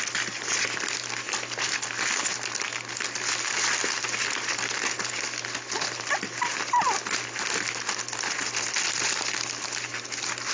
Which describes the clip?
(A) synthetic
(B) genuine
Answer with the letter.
B